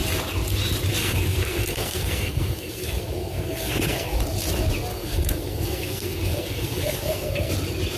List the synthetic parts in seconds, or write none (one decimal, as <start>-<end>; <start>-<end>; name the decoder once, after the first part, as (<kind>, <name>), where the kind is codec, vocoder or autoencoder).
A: 1.0-4.2 (codec, SNAC); 4.9-7.5